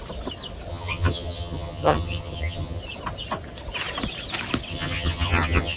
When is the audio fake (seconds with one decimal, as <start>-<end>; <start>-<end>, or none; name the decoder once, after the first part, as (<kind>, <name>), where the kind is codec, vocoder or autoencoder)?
0.7-2.8 (vocoder, HiFi-GAN); 4.7-5.8